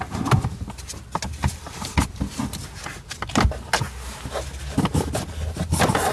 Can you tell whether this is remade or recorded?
recorded